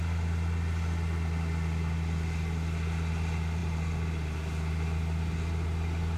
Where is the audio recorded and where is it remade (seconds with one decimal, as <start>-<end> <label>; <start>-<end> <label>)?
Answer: 0.0-6.2 recorded